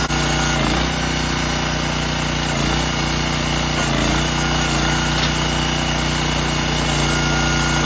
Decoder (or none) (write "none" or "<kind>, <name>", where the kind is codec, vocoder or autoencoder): none